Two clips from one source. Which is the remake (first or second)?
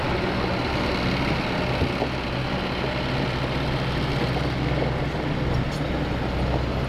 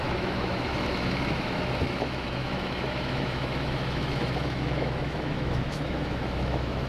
second